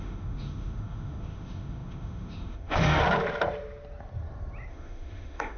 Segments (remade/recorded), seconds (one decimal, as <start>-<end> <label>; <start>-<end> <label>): 0.0-3.0 remade; 3.0-4.7 recorded; 4.7-5.6 remade